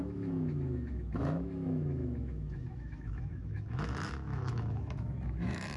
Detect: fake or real fake